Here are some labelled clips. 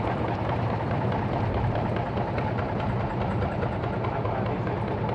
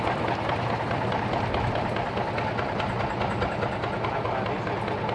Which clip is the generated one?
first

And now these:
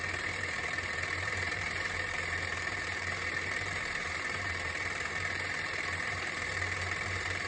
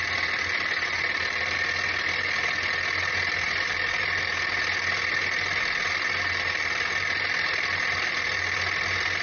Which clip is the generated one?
first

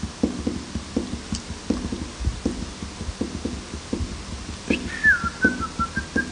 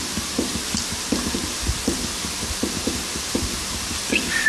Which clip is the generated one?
second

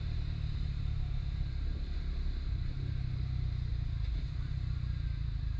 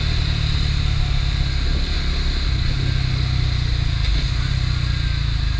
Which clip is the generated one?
first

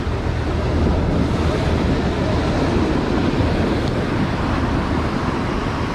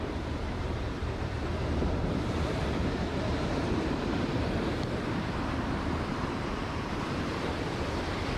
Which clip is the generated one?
second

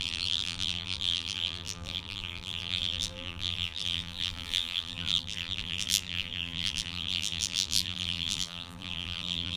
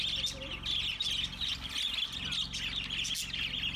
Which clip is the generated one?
first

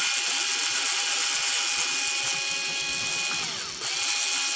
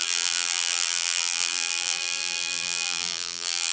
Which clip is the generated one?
second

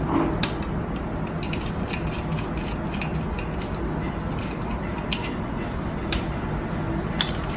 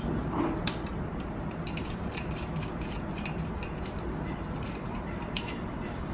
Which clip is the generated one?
second